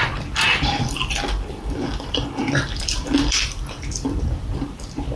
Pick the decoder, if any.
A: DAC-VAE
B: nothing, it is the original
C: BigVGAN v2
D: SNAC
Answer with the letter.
C